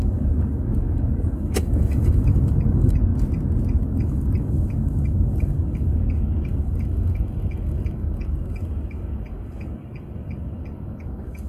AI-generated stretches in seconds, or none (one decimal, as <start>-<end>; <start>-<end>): 0.0-3.1; 3.8-11.5